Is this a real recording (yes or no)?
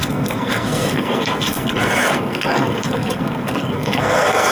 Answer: no